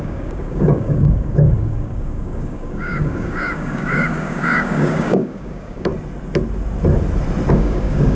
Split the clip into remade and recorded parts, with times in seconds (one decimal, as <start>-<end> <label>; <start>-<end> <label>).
0.0-5.9 remade; 5.9-7.5 recorded; 7.5-8.2 remade